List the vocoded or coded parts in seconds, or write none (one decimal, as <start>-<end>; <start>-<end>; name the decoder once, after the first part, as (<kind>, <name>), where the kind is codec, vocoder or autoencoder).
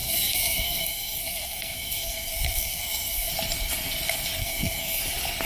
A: 0.0-3.3 (codec, SNAC); 4.4-5.0